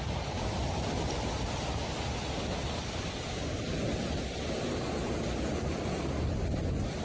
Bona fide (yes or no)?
yes